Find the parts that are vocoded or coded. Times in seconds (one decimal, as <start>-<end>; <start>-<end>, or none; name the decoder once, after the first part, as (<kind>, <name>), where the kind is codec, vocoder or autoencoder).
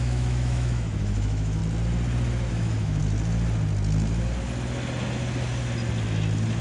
0.0-1.6 (autoencoder, DAC-VAE); 2.5-3.0